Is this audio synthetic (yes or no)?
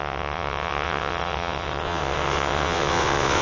yes